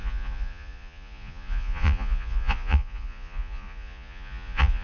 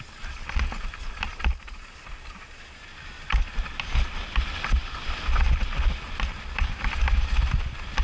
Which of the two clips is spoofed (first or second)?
first